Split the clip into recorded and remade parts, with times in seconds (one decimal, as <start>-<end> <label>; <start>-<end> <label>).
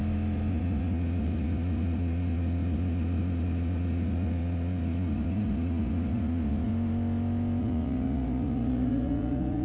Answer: 0.0-0.5 recorded; 0.5-6.7 remade; 6.7-7.6 recorded; 7.6-9.6 remade